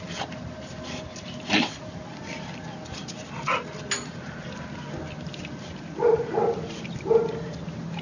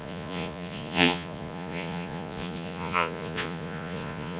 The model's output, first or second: second